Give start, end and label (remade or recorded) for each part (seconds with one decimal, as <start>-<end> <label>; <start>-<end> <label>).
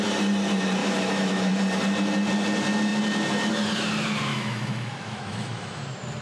0.0-0.8 recorded; 0.8-1.5 remade; 1.5-4.3 recorded; 4.3-5.8 remade; 5.8-6.2 recorded